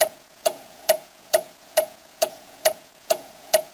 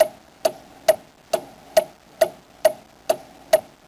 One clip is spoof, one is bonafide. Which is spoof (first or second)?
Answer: first